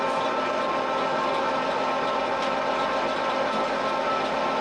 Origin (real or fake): real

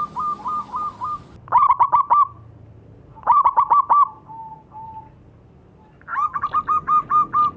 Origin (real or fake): real